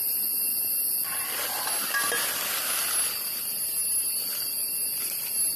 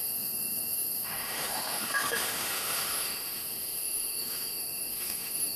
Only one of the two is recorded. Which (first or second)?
first